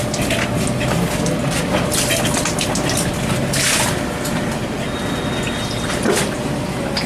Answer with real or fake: real